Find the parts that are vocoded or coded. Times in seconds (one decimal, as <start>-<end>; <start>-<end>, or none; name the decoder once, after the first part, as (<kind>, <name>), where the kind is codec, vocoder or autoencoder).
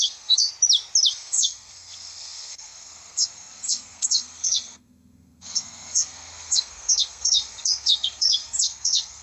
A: 0.0-0.5 (codec, SNAC); 1.1-9.2